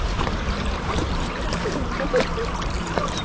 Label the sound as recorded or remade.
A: remade